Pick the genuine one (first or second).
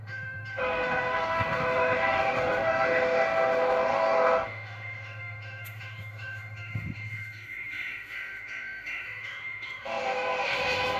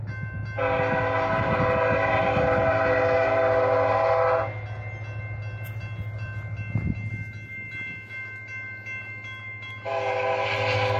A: second